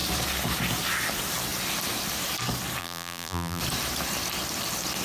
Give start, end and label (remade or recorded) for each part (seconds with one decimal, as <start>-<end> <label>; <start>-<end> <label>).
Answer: 0.0-2.8 recorded; 2.8-3.6 remade; 3.6-5.0 recorded